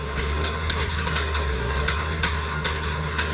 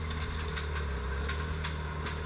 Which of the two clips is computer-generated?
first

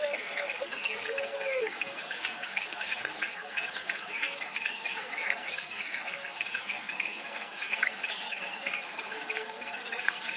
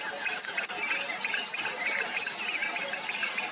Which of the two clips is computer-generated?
first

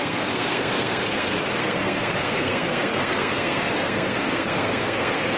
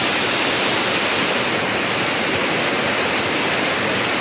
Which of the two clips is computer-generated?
first